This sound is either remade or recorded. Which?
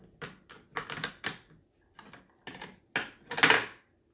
recorded